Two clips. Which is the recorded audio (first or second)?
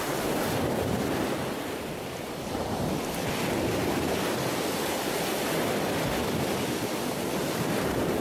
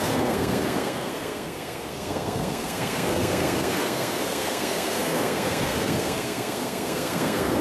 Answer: first